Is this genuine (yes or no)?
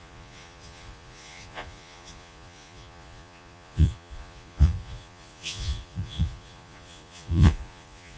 no